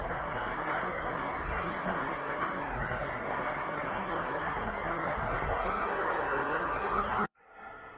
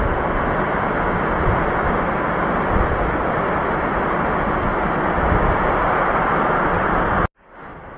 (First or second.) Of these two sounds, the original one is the second